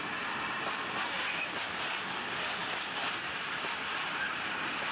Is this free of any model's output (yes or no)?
yes